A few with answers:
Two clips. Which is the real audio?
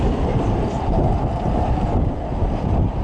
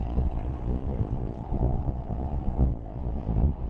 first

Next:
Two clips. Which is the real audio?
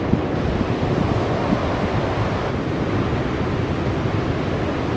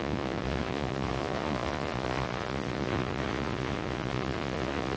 first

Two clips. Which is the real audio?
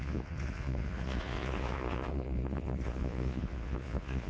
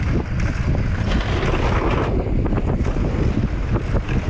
second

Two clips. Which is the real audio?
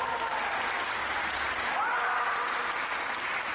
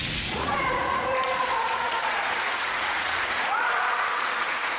first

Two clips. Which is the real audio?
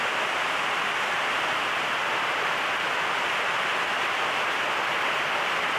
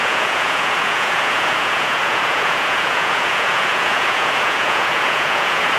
first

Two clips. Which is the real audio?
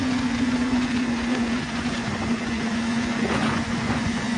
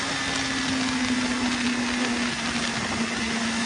second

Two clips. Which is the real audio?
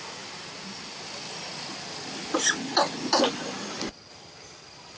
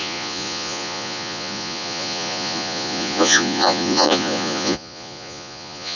first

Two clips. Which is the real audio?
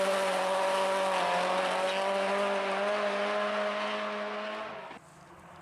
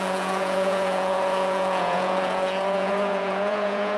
first